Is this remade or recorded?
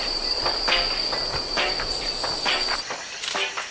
recorded